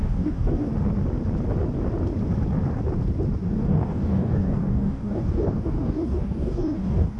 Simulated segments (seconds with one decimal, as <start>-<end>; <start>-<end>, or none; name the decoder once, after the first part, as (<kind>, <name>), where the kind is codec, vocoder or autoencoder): 0.0-0.7 (codec, DAC); 3.5-7.2